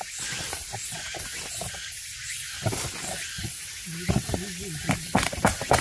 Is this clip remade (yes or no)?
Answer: no